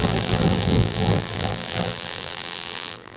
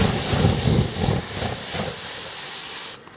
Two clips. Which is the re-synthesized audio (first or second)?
first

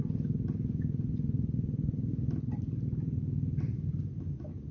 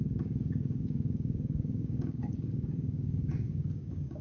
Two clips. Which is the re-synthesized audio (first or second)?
second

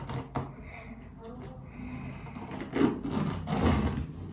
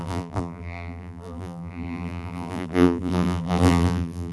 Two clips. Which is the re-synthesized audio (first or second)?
second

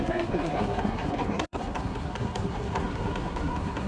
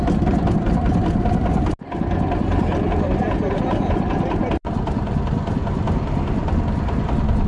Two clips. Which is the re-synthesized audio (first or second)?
first